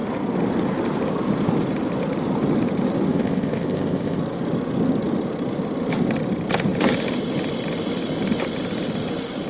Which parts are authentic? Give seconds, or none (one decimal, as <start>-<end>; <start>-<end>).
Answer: 0.0-3.1; 4.2-9.5